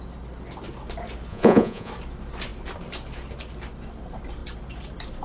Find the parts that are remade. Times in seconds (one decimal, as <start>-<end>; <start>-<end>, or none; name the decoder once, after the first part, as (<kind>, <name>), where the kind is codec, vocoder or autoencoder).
1.3-1.9 (vocoder, Vocos)